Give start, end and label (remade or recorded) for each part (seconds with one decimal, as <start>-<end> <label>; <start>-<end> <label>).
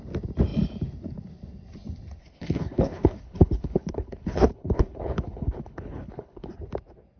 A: 0.0-2.2 recorded; 2.2-6.5 remade; 6.5-7.2 recorded